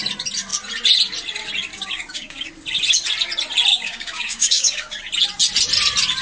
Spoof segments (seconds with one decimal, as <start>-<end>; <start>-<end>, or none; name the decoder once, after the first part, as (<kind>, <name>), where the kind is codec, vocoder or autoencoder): 1.7-2.5 (codec, DAC); 3.7-5.0